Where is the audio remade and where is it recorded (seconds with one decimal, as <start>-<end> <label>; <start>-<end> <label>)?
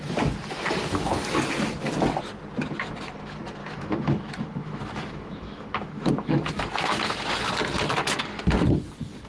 0.0-3.6 recorded; 3.6-6.6 remade; 6.6-9.3 recorded